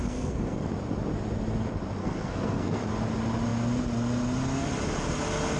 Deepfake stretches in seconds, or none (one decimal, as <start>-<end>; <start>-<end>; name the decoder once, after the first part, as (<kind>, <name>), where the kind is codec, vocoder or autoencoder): 0.0-0.7 (codec, SNAC); 2.0-2.8